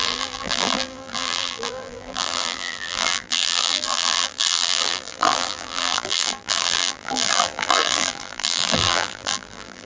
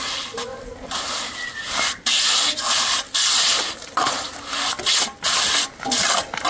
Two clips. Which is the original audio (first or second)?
second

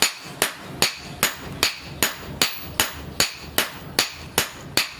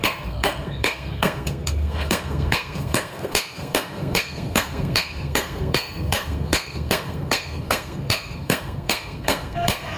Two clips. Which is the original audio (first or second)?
first